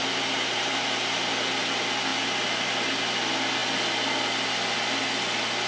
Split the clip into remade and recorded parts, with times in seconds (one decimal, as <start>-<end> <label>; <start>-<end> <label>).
0.0-5.7 recorded